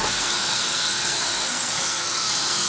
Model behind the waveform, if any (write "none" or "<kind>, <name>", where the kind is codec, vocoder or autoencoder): codec, SNAC